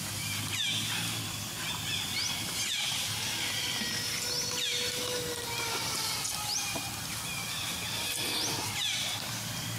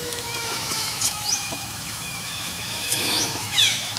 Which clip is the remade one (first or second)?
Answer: second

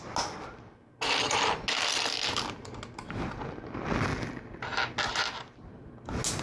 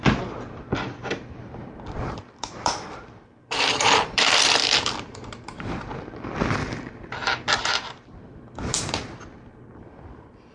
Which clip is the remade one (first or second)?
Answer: second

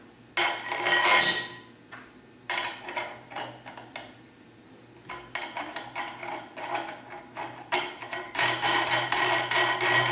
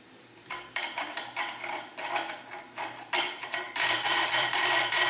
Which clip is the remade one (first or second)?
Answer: second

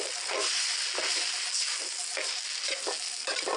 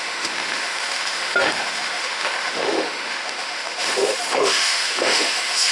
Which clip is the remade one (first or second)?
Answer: second